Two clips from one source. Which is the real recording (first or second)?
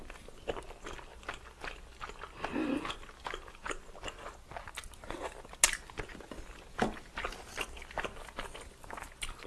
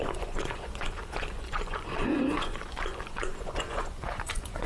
first